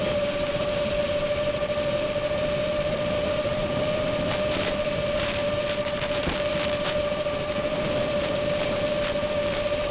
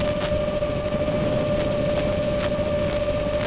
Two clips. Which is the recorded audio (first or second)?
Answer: second